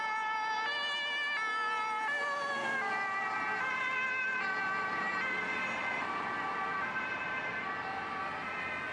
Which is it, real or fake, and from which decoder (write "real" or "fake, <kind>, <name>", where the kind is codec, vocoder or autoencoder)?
real